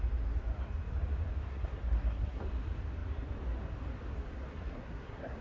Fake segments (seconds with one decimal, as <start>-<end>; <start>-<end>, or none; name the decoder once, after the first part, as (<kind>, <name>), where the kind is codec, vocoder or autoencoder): 1.5-2.4 (codec, SNAC); 4.5-5.4